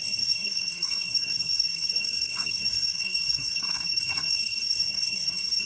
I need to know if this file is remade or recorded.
remade